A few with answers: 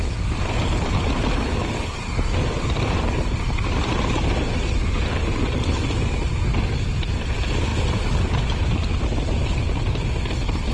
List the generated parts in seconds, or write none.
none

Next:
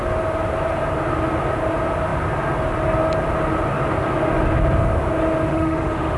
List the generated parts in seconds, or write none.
5.5-6.2

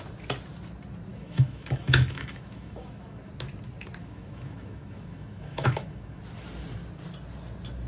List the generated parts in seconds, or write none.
1.1-3.3; 4.0-6.2

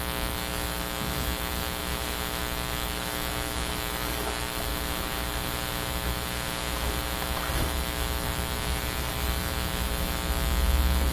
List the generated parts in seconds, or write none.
0.0-1.8; 2.4-4.7; 7.5-11.1

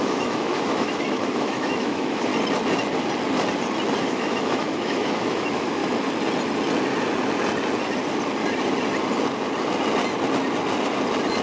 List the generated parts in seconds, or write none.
0.0-2.3; 4.0-5.8

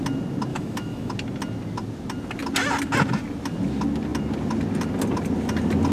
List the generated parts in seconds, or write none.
0.5-1.1

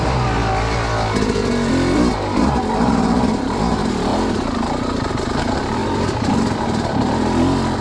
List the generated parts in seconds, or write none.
none